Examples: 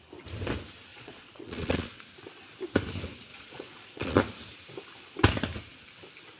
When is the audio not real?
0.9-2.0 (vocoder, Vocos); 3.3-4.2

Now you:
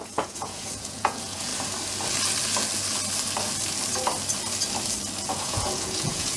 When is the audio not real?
0.0-1.5 (vocoder, Vocos); 5.3-6.4

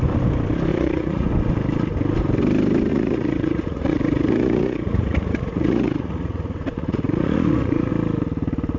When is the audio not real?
0.7-1.3 (vocoder, Vocos); 2.9-7.9

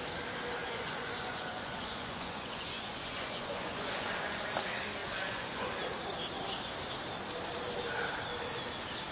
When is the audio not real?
0.6-4.4 (vocoder, Vocos); 5.0-5.7

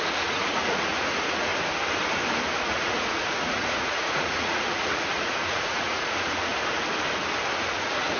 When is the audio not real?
0.0-1.5 (vocoder, Vocos); 2.6-6.5; 7.7-8.2

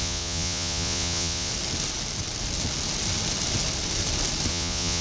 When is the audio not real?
0.0-1.5 (vocoder, Vocos); 4.5-5.0

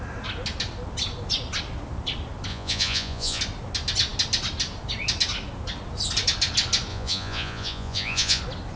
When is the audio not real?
2.5-3.4 (vocoder, Vocos); 6.9-8.4